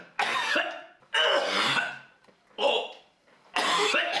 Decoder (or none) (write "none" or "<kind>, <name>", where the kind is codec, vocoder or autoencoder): none